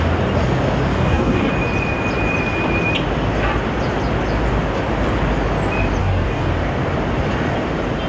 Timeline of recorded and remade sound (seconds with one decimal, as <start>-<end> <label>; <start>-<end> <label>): 0.0-0.9 recorded; 0.9-1.5 remade; 1.5-6.0 recorded; 6.0-6.5 remade; 6.5-8.1 recorded